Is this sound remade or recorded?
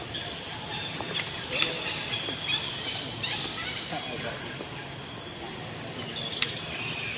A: recorded